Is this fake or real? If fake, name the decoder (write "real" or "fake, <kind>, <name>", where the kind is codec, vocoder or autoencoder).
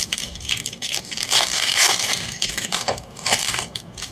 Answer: fake, codec, DAC